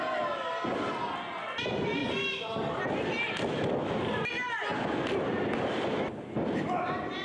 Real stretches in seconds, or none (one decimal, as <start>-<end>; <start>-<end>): 0.0-7.2